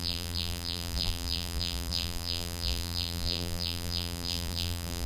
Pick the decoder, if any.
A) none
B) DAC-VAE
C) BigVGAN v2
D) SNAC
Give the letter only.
C